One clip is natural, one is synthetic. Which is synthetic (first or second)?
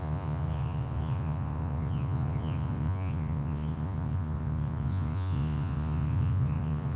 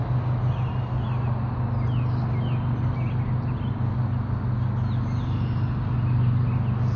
first